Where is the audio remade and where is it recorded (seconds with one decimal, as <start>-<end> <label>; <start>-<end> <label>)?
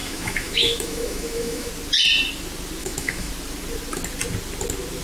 0.0-1.7 remade; 1.7-2.8 recorded; 2.8-3.3 remade; 3.3-5.0 recorded